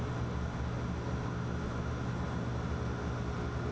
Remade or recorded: recorded